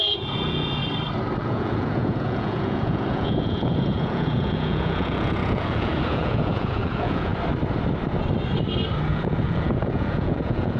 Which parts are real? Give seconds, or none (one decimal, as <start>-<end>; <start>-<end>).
0.8-1.4; 7.3-9.1